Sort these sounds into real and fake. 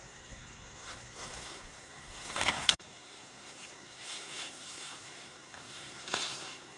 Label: fake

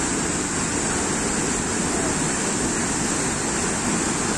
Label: real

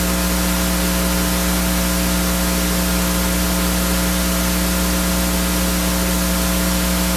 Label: real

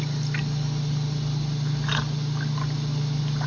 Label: real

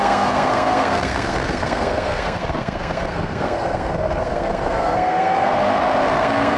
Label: fake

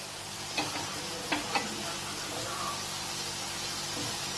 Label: real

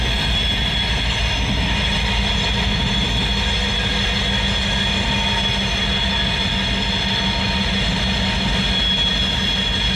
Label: real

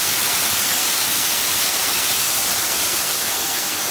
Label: fake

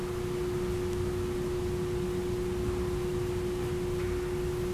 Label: real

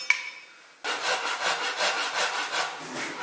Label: real